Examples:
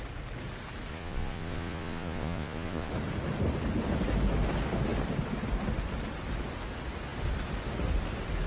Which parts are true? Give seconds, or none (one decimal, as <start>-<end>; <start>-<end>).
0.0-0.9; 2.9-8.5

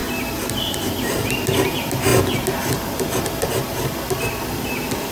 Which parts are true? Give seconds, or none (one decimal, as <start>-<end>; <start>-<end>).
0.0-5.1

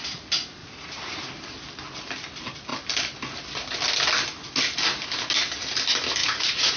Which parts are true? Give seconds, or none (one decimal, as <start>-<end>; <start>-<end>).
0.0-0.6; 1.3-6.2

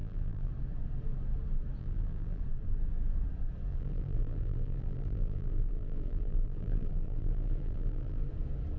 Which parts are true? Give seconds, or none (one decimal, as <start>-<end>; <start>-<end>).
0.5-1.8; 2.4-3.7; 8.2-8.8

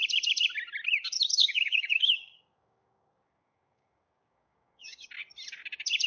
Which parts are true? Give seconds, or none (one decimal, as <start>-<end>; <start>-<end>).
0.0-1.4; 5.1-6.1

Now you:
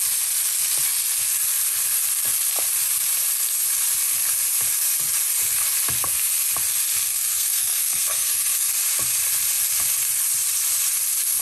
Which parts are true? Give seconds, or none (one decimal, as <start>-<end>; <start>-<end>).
0.0-7.1; 8.7-11.4

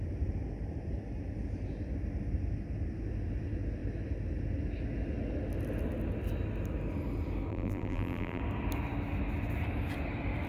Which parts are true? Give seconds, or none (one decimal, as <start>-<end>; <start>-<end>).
0.0-7.5; 8.4-10.5